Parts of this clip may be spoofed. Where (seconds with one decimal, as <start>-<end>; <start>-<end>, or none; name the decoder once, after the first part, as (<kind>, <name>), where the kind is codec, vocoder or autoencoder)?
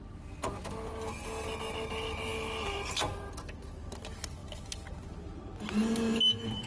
none